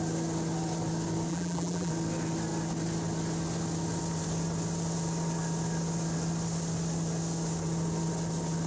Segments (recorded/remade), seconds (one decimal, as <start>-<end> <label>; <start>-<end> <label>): 0.0-1.3 recorded; 1.3-1.9 remade; 1.9-8.7 recorded